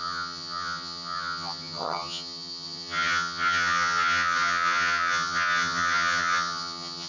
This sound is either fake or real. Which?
fake